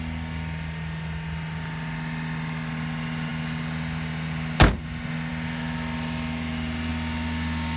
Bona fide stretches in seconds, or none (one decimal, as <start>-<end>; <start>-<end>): 0.0-7.8